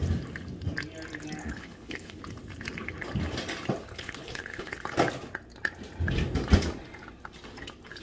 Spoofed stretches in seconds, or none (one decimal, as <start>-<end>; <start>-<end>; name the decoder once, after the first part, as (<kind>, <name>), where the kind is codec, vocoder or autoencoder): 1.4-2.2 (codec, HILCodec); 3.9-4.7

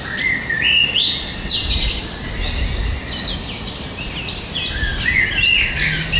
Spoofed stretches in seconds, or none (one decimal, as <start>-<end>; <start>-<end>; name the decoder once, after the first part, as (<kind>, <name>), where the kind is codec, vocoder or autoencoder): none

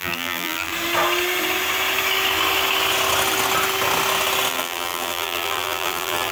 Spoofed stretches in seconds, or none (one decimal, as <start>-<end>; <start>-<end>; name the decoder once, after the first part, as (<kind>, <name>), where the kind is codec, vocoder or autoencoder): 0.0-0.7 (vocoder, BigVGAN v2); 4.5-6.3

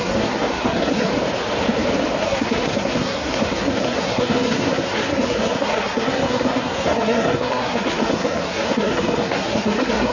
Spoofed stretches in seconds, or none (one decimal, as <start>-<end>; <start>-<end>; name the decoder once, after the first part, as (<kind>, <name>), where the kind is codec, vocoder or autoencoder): 0.0-1.1 (codec, SNAC); 2.2-10.1

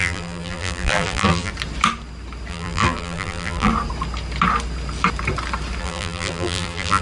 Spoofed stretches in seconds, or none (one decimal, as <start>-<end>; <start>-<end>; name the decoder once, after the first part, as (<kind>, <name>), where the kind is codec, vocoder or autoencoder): 0.0-1.5 (vocoder, BigVGAN v2); 2.5-3.7; 5.8-7.0